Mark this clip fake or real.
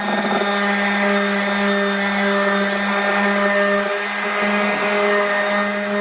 real